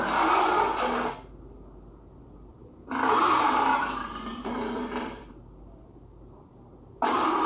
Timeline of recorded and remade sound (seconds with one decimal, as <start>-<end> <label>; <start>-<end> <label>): 0.0-2.5 recorded; 2.5-3.8 remade; 3.8-4.3 recorded; 4.3-5.3 remade; 5.3-7.5 recorded